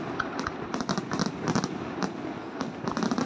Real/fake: real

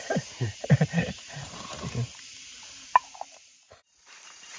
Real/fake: fake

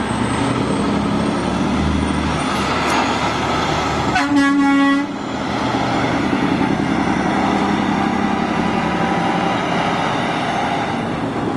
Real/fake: real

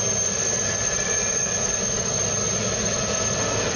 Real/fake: real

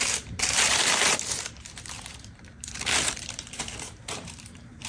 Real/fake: fake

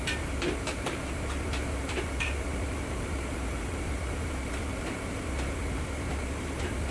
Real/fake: fake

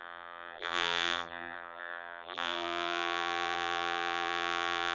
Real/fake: fake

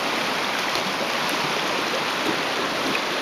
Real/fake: real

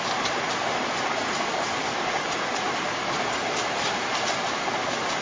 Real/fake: fake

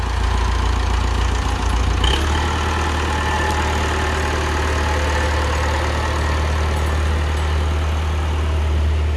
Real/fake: real